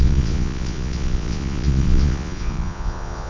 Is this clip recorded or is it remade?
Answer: remade